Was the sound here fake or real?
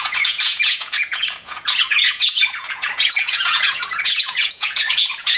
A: fake